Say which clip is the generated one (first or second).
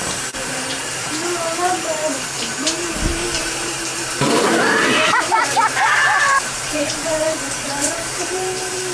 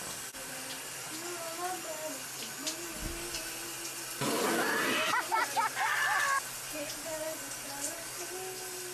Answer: first